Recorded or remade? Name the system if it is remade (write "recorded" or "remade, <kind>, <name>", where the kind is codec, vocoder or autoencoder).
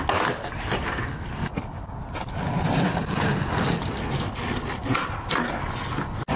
recorded